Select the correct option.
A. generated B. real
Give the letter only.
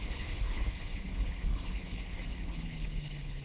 A